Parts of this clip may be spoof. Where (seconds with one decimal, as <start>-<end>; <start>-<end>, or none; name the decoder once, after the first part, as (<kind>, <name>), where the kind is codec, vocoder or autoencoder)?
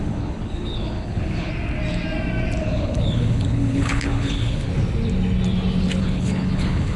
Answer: 0.0-1.5 (codec, HILCodec); 2.6-4.7; 6.0-7.0